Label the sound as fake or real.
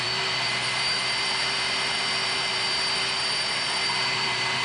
fake